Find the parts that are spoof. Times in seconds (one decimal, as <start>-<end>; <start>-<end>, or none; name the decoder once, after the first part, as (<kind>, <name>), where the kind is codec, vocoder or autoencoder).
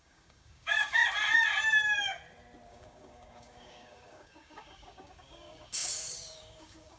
0.0-1.0 (codec, DAC); 2.7-7.0